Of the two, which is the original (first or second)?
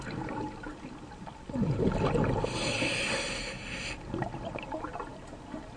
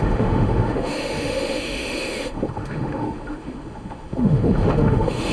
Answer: first